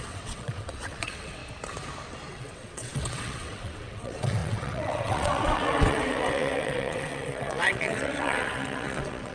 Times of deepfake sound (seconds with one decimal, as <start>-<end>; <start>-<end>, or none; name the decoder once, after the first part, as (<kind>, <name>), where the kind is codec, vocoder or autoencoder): 0.0-1.4 (vocoder, WaveNeXt); 2.3-9.3